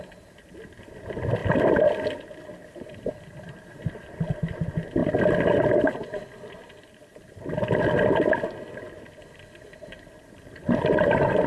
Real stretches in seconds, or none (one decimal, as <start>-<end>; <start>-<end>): 0.0-11.5